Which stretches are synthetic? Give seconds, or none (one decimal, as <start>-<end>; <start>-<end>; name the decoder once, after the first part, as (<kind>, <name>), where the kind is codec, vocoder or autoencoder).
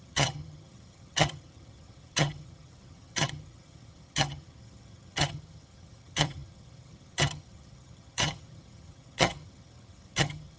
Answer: 0.0-10.6 (vocoder, HiFi-GAN)